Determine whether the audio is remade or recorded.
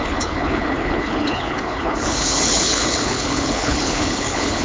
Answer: remade